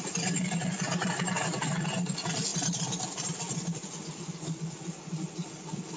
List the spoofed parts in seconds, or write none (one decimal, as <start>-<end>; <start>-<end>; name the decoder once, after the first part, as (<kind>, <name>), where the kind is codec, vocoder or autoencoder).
none